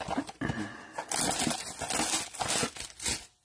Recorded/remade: recorded